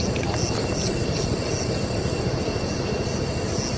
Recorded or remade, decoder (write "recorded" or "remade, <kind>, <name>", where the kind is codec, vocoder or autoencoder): recorded